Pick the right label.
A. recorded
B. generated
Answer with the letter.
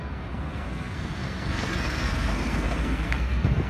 B